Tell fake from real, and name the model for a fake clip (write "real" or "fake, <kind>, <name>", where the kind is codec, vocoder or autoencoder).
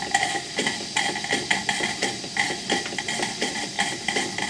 real